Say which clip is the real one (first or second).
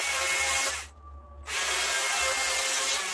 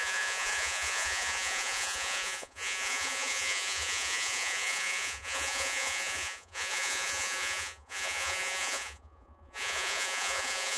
first